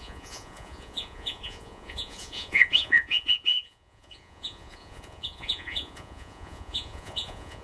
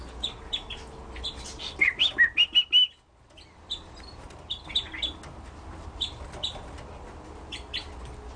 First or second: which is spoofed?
first